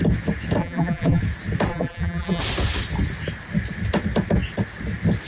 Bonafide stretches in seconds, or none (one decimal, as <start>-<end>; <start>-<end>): 0.0-0.6; 1.2-1.7; 2.4-5.3